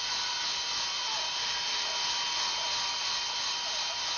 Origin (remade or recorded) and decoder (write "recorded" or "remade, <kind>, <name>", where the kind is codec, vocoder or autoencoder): recorded